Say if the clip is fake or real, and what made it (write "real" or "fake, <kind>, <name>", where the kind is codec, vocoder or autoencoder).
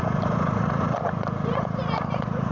fake, vocoder, Vocos